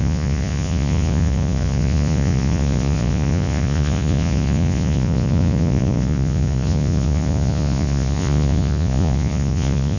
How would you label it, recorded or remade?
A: remade